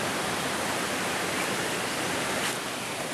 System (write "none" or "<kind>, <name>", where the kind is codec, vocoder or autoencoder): none